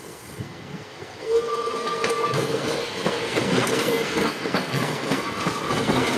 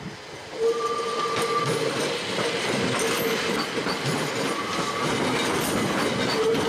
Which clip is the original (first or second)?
second